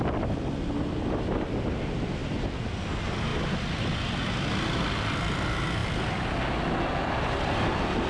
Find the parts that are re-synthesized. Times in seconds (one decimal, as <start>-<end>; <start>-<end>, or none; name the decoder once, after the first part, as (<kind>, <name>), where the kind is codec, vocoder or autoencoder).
none